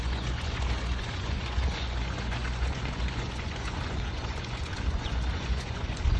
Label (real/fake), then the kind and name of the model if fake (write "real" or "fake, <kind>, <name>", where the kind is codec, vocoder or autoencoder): fake, vocoder, Vocos